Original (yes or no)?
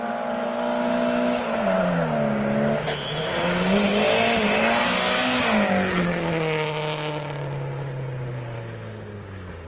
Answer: yes